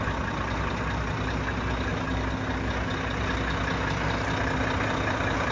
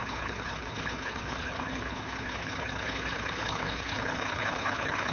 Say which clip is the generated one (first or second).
second